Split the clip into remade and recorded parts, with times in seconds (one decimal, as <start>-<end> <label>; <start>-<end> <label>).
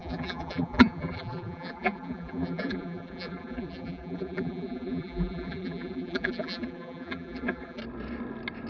0.0-7.8 remade; 7.8-8.7 recorded